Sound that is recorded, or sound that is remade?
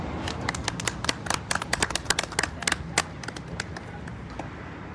recorded